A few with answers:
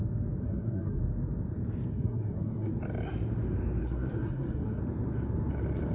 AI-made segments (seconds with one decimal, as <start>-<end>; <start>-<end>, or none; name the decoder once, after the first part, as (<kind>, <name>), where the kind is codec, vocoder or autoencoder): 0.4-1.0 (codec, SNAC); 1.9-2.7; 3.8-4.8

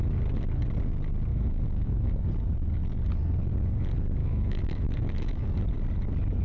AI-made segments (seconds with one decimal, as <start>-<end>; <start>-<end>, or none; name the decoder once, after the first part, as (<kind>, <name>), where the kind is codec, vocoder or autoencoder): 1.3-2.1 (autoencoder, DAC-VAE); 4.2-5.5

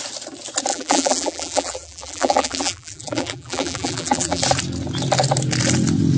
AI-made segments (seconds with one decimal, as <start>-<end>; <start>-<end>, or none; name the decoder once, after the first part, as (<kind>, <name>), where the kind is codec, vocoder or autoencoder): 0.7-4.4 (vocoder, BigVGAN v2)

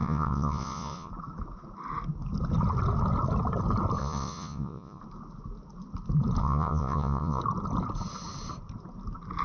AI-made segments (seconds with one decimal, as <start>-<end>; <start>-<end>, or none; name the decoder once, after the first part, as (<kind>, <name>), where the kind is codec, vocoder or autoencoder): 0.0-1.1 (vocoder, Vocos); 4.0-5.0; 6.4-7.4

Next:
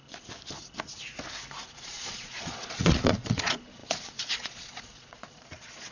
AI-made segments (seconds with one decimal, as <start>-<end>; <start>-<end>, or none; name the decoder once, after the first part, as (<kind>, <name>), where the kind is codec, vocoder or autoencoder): 1.7-5.9 (vocoder, Vocos)

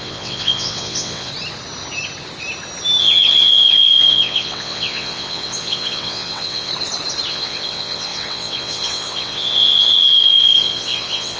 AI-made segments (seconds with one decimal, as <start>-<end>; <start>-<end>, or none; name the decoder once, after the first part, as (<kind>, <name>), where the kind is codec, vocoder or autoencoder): 0.0-1.3 (vocoder, WaveNeXt); 3.0-6.7; 7.3-11.4

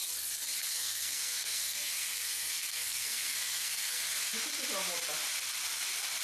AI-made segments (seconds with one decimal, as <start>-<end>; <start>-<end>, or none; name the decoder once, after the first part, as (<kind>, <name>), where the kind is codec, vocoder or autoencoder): 0.6-4.3 (codec, SNAC)

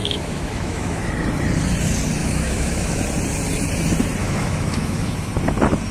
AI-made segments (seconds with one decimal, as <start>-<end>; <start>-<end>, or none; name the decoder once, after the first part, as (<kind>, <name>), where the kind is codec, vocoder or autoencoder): 0.0-1.1 (autoencoder, DAC-VAE); 2.2-3.0; 4.2-5.3